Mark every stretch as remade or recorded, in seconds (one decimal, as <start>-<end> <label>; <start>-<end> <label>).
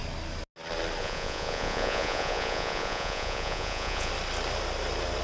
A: 0.0-1.0 recorded; 1.0-4.1 remade; 4.1-5.2 recorded